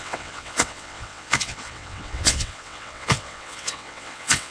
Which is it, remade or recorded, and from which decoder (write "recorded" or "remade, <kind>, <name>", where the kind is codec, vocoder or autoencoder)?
remade, vocoder, WaveNeXt